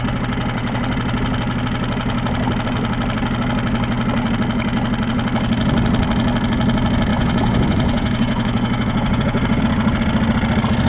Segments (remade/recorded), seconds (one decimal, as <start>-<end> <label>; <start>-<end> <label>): 0.0-7.1 recorded; 7.1-9.6 remade; 9.6-10.9 recorded

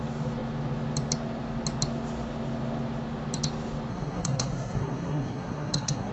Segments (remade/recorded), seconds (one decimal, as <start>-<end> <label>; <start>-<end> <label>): 0.0-3.9 recorded; 3.9-6.1 remade

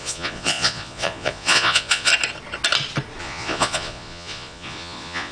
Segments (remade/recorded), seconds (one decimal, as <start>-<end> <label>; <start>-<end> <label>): 0.0-2.1 remade; 2.1-3.2 recorded; 3.2-5.3 remade

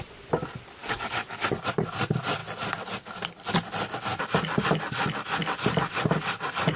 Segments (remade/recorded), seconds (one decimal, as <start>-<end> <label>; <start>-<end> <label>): 0.0-0.8 recorded; 0.8-1.4 remade; 1.4-6.8 recorded

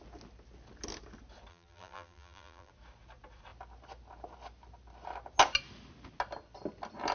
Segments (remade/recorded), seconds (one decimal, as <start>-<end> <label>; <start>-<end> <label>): 0.0-1.5 recorded; 1.5-2.7 remade; 2.7-7.1 recorded

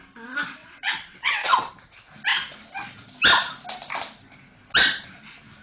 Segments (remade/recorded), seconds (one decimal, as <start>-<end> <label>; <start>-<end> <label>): 0.0-0.6 recorded; 0.6-1.7 remade; 1.7-5.6 recorded